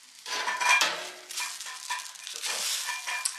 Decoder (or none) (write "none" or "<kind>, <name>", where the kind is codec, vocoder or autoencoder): none